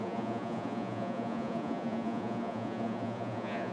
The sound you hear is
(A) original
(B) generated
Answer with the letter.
B